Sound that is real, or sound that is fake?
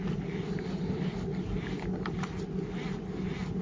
real